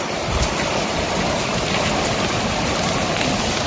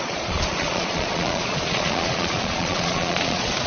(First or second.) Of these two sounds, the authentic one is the first